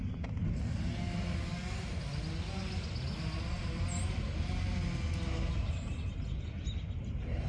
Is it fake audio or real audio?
real